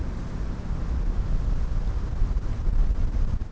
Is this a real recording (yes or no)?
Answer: yes